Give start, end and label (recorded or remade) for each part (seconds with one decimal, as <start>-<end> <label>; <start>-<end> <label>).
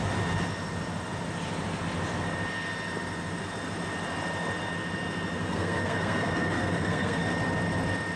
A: 0.0-5.4 recorded; 5.4-7.2 remade; 7.2-8.2 recorded